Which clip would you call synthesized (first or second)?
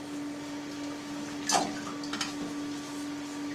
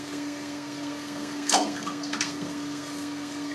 second